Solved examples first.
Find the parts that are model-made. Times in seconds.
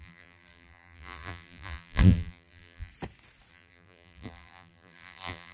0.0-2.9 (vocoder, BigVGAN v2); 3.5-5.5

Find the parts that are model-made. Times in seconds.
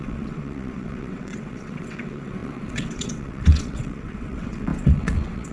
0.0-5.5 (vocoder, WaveNeXt)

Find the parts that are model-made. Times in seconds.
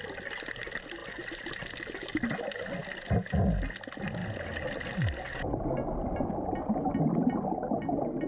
none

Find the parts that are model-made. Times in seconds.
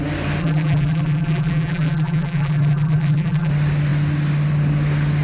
0.4-3.5 (vocoder, BigVGAN v2)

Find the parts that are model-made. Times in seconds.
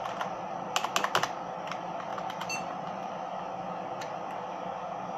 none